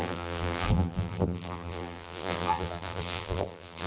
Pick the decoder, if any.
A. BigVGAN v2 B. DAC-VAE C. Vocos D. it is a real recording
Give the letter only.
A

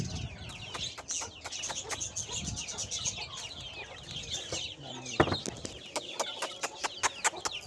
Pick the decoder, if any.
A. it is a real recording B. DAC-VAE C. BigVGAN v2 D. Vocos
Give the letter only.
A